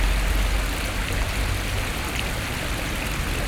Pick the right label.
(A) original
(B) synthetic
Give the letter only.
A